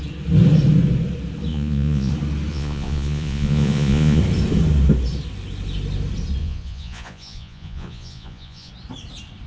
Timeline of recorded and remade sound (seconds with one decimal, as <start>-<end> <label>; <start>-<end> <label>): 0.0-1.5 recorded; 1.5-2.1 remade; 2.1-2.5 recorded; 2.5-4.2 remade; 4.2-6.4 recorded; 6.4-8.7 remade; 8.7-9.5 recorded